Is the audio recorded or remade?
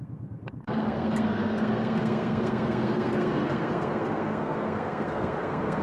remade